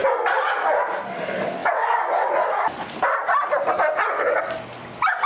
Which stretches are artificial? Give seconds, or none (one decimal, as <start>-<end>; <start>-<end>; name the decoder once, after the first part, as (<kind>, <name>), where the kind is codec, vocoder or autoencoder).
1.6-4.4 (vocoder, BigVGAN v2)